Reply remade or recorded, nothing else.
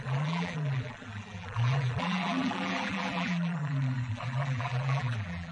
remade